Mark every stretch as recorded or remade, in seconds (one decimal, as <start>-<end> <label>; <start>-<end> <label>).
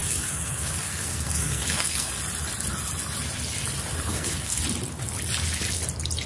0.0-2.1 remade; 2.1-4.1 recorded; 4.1-4.6 remade; 4.6-6.3 recorded